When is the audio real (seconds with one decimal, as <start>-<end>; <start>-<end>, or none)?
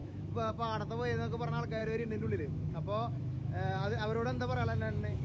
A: 0.5-1.8